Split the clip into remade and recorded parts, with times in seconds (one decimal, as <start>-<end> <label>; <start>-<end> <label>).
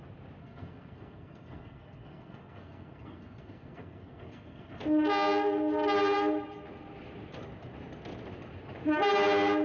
0.0-0.4 recorded; 0.4-4.8 remade; 4.8-9.6 recorded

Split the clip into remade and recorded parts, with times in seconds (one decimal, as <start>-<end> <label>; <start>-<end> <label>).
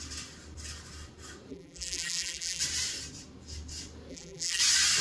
0.0-1.5 recorded; 1.5-2.6 remade; 2.6-4.1 recorded; 4.1-4.6 remade; 4.6-5.0 recorded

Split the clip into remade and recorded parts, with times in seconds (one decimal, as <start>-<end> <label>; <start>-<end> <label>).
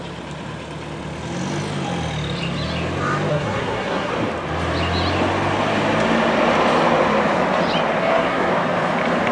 0.0-3.3 recorded; 3.3-4.1 remade; 4.1-8.0 recorded; 8.0-8.5 remade; 8.5-9.3 recorded